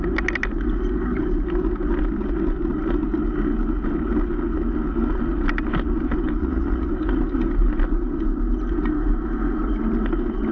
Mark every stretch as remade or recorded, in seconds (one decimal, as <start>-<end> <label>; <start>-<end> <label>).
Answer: 0.0-6.4 recorded; 6.4-6.9 remade; 6.9-10.5 recorded